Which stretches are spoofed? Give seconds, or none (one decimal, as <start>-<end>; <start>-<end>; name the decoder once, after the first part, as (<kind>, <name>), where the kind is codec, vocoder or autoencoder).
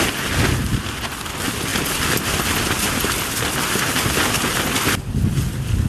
none